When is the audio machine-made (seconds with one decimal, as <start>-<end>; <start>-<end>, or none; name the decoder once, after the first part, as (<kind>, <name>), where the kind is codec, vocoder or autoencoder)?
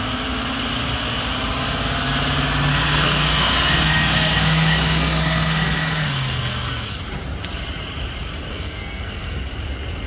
2.7-7.0 (codec, SNAC); 8.5-9.4